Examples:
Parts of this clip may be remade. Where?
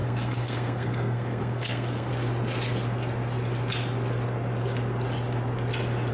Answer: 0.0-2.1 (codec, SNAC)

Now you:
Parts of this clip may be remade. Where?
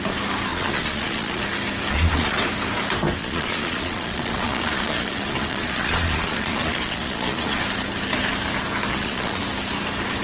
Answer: 0.5-1.4 (vocoder, Vocos); 1.9-2.4; 3.2-7.6; 8.9-9.4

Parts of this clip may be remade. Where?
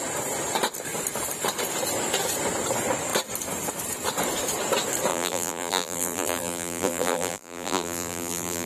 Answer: 5.1-8.7 (vocoder, BigVGAN v2)